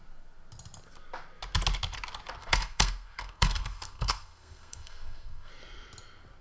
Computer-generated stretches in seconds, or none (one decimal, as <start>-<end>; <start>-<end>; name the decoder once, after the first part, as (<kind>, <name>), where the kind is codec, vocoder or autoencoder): 2.4-5.5 (codec, SNAC)